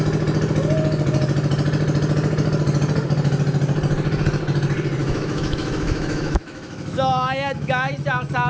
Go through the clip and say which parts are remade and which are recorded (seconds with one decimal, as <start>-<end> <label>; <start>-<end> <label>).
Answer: 0.0-5.0 recorded; 5.0-7.9 remade; 7.9-8.5 recorded